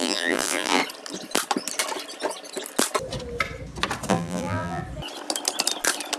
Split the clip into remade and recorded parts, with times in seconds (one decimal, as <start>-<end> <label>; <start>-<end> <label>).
0.0-0.8 remade; 0.8-4.1 recorded; 4.1-4.8 remade; 4.8-6.2 recorded